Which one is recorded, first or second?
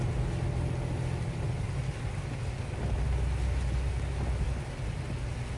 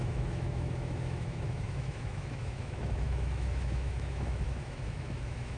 first